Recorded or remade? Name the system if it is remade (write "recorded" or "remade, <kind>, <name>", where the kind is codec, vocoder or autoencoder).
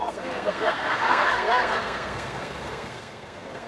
remade, codec, SNAC